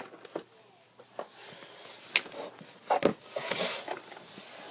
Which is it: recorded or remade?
recorded